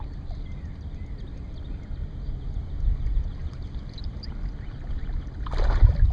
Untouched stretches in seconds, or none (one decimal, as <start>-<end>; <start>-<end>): 0.0-6.1